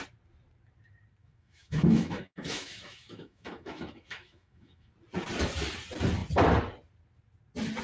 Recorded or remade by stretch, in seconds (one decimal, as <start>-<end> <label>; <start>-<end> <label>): 0.0-1.2 recorded; 1.2-4.9 remade; 4.9-7.8 recorded